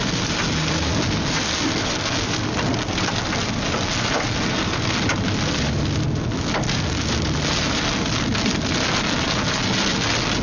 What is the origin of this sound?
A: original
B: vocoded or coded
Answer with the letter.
A